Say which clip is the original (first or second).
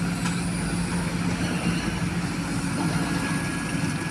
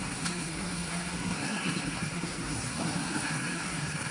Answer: first